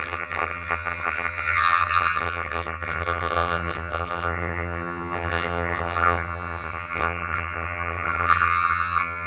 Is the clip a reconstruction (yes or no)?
yes